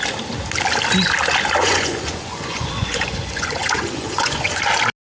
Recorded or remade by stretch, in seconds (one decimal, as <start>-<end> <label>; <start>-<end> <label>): 0.0-1.6 recorded; 1.6-4.6 remade; 4.6-5.0 recorded